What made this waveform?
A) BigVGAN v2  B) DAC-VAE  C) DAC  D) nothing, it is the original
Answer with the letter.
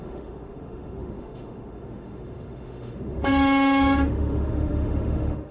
B